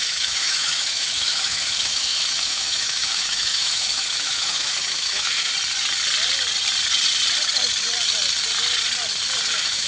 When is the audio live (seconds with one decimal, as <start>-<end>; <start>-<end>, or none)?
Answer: 5.5-9.5

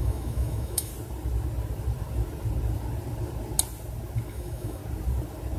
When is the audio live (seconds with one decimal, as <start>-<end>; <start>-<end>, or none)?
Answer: 0.9-4.3; 4.8-5.6

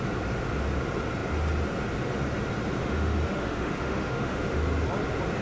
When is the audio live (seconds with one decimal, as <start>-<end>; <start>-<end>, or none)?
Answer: 0.0-2.8; 4.6-5.4